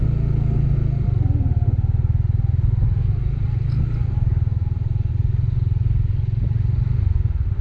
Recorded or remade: recorded